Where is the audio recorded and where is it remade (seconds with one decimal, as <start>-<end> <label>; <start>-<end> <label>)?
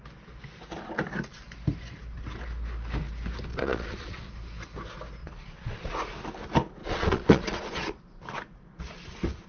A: 0.0-3.5 recorded; 3.5-4.3 remade; 4.3-5.2 recorded; 5.2-5.9 remade; 5.9-6.8 recorded; 6.8-7.9 remade; 7.9-9.5 recorded